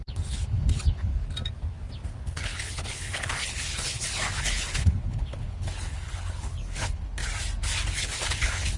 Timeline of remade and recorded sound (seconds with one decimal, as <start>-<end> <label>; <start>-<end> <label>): 0.0-1.1 remade; 1.1-2.1 recorded; 2.1-7.2 remade; 7.2-7.9 recorded; 7.9-8.8 remade